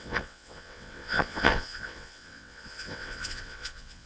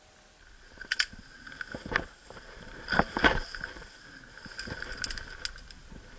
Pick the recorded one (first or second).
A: second